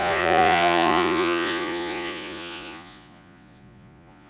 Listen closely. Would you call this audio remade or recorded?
remade